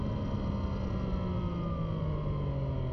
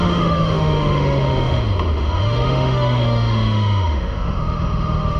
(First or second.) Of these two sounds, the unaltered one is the first